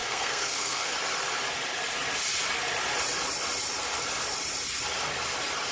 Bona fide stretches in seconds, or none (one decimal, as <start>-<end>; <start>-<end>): 0.9-5.7